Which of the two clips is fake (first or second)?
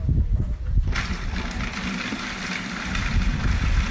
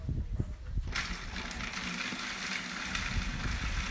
first